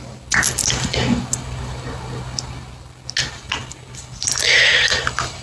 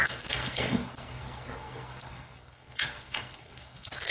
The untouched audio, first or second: first